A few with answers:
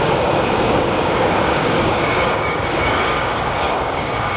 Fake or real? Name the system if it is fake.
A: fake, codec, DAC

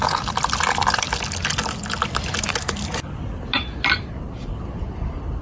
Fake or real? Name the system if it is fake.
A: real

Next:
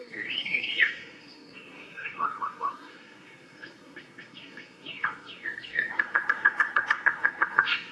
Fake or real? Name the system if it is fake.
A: fake, codec, SNAC